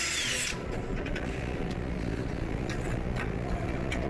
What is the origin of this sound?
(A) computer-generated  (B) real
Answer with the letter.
A